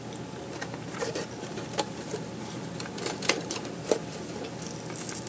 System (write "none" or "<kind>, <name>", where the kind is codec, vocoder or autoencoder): none